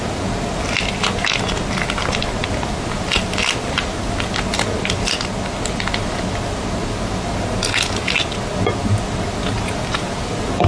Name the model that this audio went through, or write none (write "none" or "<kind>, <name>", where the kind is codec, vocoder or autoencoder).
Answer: none